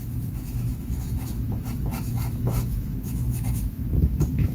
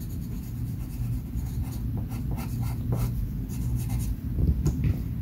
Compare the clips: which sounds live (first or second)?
second